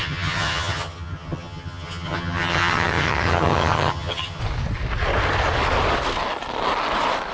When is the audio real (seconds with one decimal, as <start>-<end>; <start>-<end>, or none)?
4.4-7.3